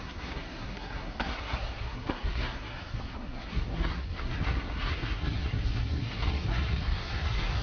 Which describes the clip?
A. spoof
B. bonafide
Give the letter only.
A